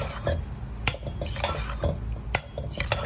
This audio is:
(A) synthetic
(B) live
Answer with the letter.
B